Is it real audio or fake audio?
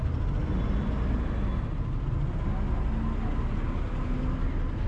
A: real